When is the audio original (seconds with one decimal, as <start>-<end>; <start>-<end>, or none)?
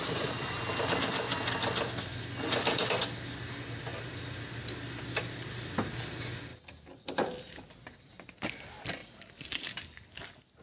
0.0-3.9; 5.0-6.5; 8.2-9.0; 9.7-10.6